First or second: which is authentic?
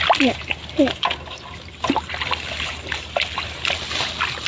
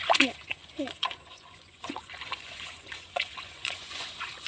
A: first